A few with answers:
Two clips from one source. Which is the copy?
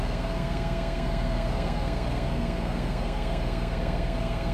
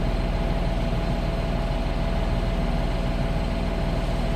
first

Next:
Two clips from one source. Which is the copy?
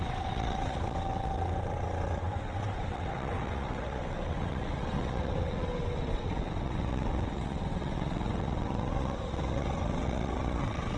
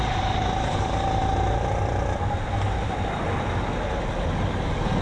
first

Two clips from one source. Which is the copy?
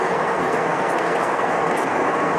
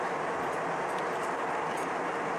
first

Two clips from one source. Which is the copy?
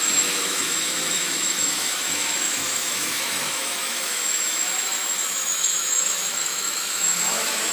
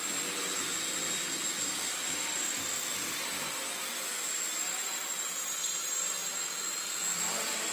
first